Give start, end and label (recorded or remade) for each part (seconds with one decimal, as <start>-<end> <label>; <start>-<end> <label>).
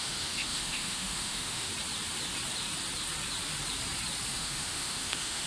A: 0.0-1.7 remade; 1.7-4.3 recorded; 4.3-5.5 remade